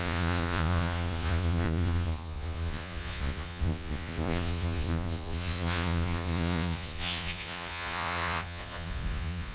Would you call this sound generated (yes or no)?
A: yes